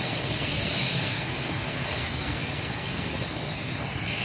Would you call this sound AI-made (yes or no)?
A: yes